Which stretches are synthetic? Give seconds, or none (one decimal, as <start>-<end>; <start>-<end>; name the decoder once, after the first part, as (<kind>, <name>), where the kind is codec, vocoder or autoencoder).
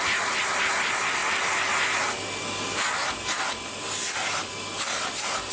none